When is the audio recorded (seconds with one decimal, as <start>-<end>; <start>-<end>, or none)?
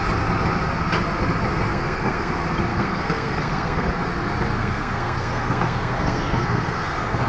0.0-1.7; 2.3-2.7; 3.9-4.6